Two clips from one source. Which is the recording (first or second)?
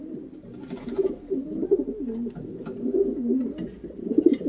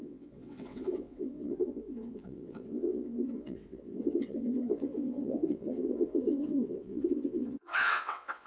first